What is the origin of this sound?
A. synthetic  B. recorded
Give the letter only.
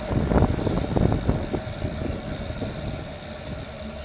B